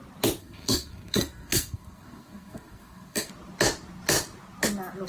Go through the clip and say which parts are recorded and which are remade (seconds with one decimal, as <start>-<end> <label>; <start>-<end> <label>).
0.0-0.4 recorded; 0.4-3.3 remade; 3.3-5.1 recorded